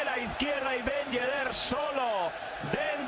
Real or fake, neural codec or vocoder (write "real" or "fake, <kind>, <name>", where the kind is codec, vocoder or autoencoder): fake, vocoder, Vocos